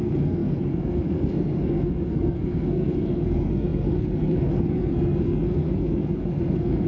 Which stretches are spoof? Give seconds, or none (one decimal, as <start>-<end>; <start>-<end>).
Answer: 0.0-6.9